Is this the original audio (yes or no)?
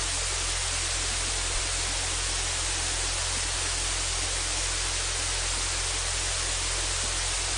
yes